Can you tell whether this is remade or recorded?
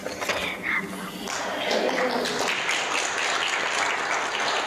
recorded